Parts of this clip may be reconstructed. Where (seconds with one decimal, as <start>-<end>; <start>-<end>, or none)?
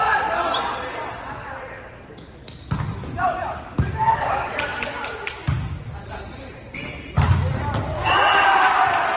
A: 0.0-2.1; 2.9-9.2